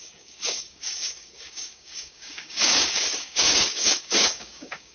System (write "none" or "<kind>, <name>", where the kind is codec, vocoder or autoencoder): codec, DAC